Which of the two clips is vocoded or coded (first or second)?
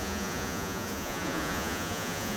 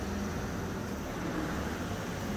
first